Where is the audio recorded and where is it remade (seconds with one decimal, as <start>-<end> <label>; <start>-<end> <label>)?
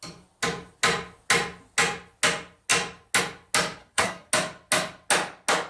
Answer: 0.0-3.8 recorded; 3.8-4.3 remade; 4.3-5.7 recorded